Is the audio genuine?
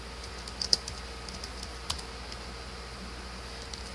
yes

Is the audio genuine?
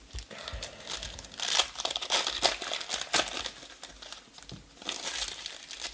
yes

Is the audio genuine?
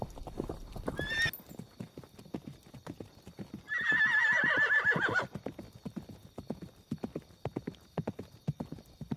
yes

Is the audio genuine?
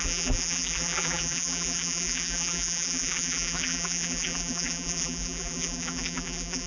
no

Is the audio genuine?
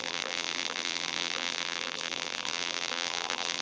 no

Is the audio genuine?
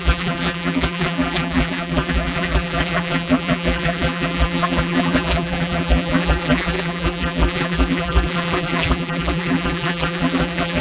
no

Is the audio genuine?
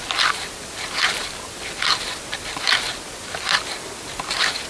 yes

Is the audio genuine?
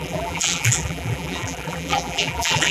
no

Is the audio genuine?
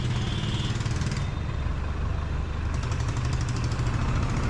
yes